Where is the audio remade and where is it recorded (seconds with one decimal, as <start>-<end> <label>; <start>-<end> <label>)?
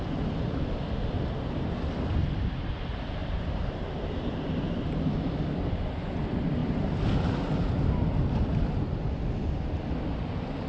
0.0-3.2 recorded; 3.2-4.7 remade; 4.7-10.7 recorded